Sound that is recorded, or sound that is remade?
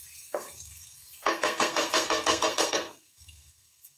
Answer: remade